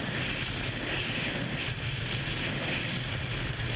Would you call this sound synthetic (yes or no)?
no